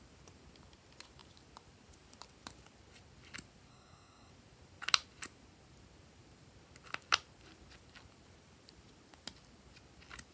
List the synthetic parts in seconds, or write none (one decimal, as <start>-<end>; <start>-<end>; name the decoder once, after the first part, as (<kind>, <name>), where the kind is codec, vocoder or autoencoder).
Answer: 3.7-4.3 (codec, SNAC)